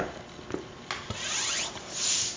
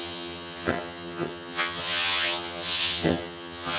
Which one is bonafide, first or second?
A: first